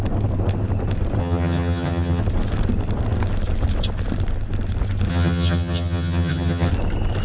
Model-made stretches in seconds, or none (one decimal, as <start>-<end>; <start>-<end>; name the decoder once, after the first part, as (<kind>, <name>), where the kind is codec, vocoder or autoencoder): 1.2-2.2 (vocoder, HiFi-GAN); 5.1-6.7